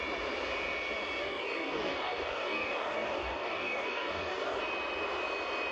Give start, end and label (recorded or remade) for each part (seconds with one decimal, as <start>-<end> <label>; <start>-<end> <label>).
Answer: 0.0-1.2 recorded; 1.2-4.6 remade; 4.6-5.7 recorded